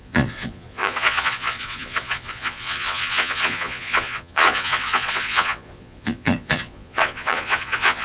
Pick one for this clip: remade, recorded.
remade